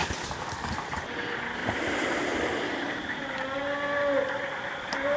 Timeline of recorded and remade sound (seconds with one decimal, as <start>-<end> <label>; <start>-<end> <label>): 0.0-0.7 remade; 0.7-5.2 recorded